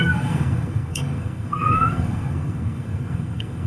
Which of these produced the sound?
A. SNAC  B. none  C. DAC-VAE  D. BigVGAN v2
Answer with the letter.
A